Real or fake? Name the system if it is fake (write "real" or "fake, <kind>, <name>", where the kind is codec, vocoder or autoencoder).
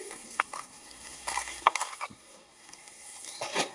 fake, codec, SNAC